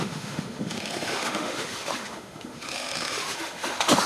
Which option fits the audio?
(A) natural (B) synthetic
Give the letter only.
B